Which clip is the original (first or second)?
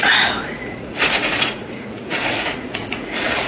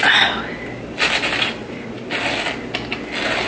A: second